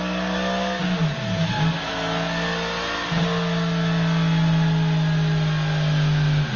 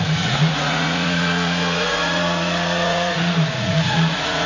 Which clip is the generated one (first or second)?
second